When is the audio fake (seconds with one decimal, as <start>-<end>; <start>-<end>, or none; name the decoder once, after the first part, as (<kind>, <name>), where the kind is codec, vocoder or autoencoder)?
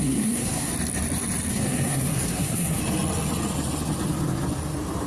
0.0-0.7 (codec, SNAC); 1.5-2.8